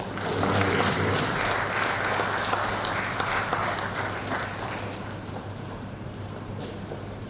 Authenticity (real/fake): real